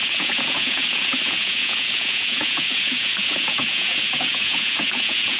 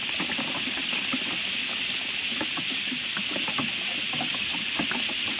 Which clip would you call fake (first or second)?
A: first